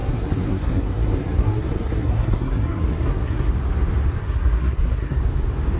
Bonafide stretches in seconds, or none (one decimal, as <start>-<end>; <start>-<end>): 3.5-4.2; 5.2-5.8